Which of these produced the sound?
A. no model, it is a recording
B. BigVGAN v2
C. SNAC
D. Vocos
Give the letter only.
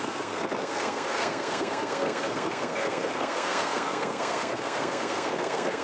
C